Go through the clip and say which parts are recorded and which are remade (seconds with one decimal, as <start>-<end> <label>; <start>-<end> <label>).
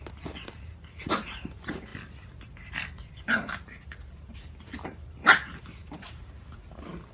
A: 0.0-0.5 recorded; 0.5-1.9 remade; 1.9-3.1 recorded; 3.1-7.1 remade